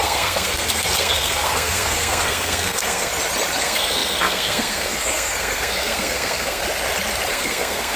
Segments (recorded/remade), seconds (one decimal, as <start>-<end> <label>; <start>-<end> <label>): 0.0-3.1 remade; 3.1-3.6 recorded; 3.6-6.6 remade; 6.6-7.3 recorded; 7.3-8.0 remade